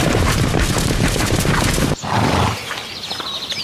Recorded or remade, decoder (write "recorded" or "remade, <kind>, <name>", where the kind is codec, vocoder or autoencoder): recorded